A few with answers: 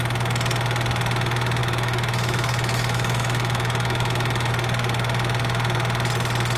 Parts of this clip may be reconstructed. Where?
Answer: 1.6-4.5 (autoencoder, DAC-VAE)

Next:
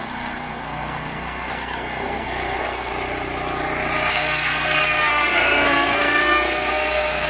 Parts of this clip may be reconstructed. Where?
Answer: 0.0-2.9 (codec, SNAC); 4.1-7.3

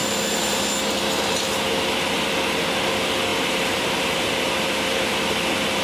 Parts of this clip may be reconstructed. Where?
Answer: 0.0-0.6 (vocoder, BigVGAN v2); 3.3-5.1

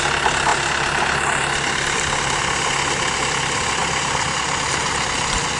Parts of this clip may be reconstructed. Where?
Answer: none

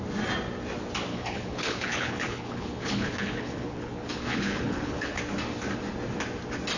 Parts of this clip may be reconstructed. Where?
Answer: 1.1-5.2 (codec, HILCodec)